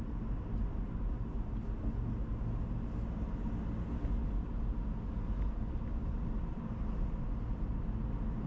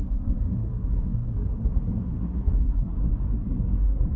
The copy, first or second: second